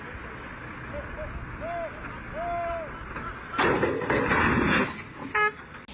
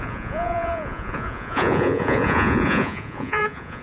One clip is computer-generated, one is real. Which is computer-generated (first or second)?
second